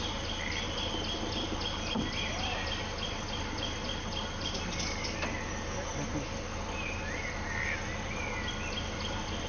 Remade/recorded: recorded